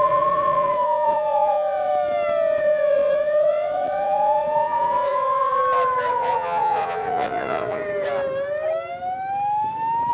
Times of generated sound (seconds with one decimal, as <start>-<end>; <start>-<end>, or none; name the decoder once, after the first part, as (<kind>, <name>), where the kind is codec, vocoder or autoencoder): 0.0-1.9 (vocoder, Vocos); 2.6-5.6; 6.1-7.8